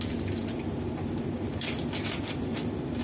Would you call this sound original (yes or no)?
yes